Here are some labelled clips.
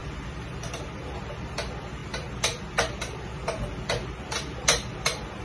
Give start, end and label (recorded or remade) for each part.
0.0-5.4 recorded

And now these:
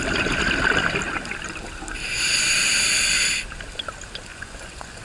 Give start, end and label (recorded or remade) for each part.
0.0-4.3 recorded; 4.3-5.0 remade